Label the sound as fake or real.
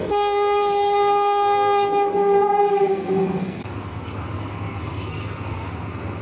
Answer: fake